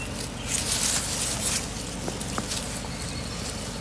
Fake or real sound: real